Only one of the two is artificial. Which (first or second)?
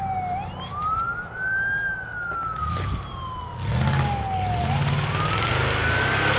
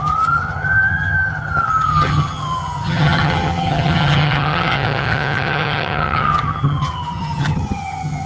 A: second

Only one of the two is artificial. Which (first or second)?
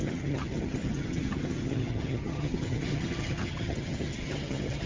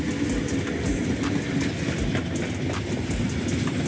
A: first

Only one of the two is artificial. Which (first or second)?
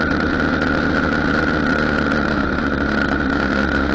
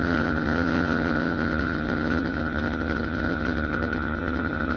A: second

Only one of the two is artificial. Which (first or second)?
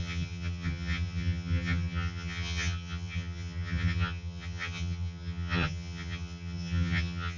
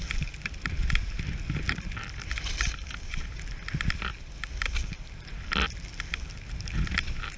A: first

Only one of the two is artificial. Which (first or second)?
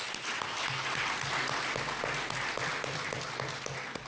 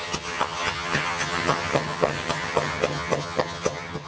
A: second